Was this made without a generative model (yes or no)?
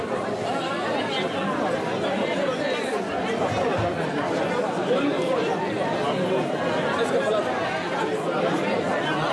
yes